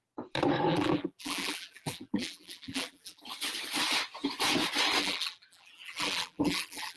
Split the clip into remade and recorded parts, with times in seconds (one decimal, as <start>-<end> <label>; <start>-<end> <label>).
0.0-0.7 recorded; 0.7-3.2 remade; 3.2-5.0 recorded; 5.0-7.0 remade